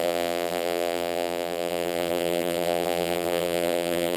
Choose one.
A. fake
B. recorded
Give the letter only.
A